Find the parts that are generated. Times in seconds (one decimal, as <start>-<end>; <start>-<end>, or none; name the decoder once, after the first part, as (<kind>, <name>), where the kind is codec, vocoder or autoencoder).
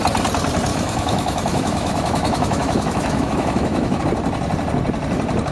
0.7-4.0 (autoencoder, DAC-VAE)